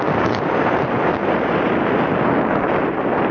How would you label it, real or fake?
real